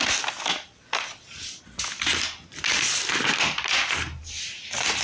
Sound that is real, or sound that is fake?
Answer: real